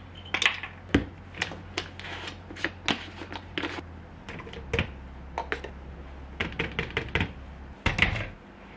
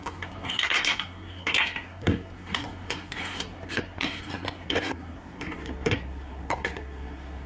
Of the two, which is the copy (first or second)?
second